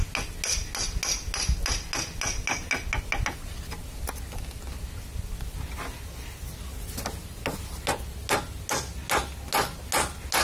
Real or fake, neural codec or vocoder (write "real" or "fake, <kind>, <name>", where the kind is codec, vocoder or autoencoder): real